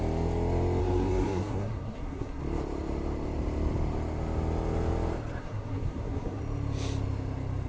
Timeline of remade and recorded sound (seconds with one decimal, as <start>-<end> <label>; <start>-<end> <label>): 0.0-0.8 recorded; 0.8-2.4 remade; 2.4-5.4 recorded; 5.4-6.4 remade; 6.4-7.7 recorded